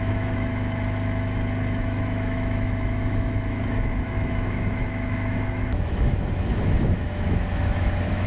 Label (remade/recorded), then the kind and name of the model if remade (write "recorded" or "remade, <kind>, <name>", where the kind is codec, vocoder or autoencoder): remade, autoencoder, DAC-VAE